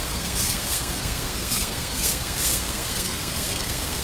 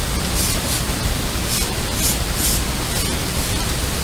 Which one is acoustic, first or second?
second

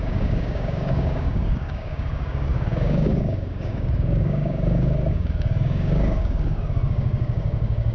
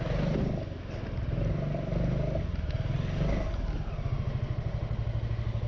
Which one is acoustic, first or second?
second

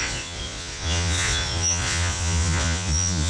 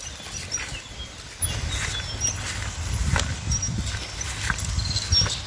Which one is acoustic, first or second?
second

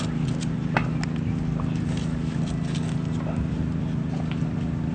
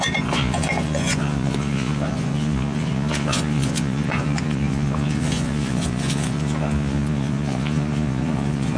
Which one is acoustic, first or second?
first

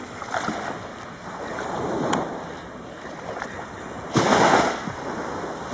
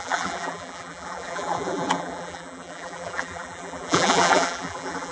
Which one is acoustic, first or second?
first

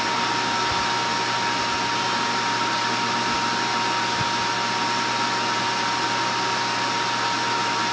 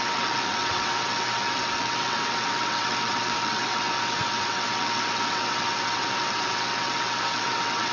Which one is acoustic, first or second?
first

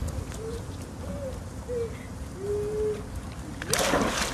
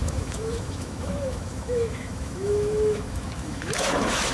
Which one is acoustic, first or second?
first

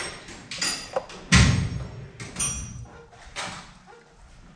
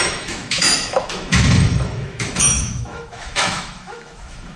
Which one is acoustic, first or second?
first